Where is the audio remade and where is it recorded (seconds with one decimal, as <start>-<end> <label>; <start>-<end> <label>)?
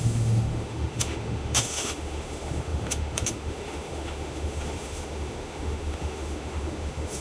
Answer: 0.0-7.2 remade